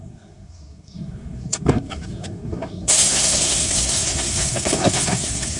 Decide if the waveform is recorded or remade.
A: remade